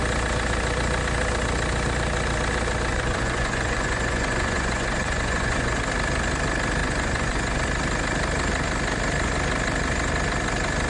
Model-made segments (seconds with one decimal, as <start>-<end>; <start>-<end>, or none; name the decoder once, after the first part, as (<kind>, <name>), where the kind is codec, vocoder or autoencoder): 2.9-5.8 (vocoder, Vocos); 6.8-7.6